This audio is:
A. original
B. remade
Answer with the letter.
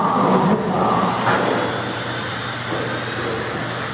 A